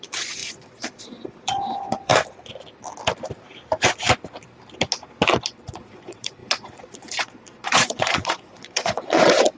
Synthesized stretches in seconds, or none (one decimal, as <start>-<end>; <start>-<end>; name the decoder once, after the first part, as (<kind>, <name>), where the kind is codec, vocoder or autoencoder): 0.0-2.1 (vocoder, Vocos); 5.7-9.6